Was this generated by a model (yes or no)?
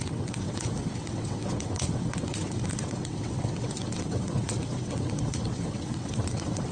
yes